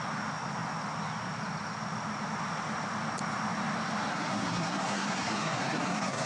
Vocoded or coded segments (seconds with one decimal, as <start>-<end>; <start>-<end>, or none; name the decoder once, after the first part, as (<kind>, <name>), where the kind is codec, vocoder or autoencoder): 4.1-6.3 (codec, SNAC)